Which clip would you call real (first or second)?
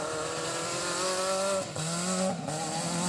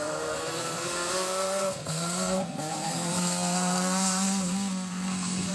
first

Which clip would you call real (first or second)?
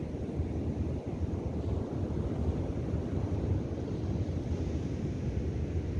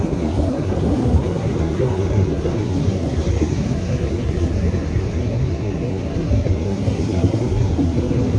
first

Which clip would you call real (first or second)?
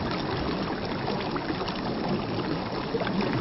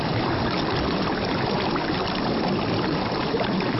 first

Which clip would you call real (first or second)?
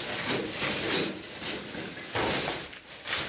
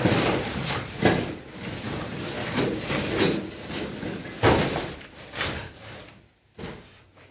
second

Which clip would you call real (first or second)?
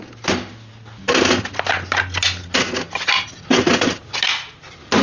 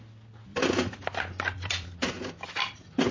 first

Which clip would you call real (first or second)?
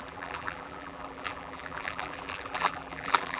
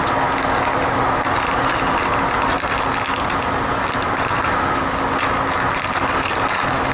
second